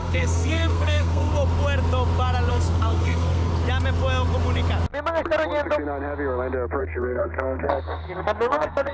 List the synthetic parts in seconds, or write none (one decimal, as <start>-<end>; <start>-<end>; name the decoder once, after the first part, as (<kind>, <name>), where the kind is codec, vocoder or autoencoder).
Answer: 0.0-1.3 (codec, SNAC); 2.5-3.5; 6.8-8.9